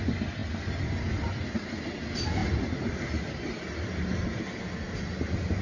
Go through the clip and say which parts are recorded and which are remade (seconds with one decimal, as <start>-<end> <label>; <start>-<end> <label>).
0.0-5.6 recorded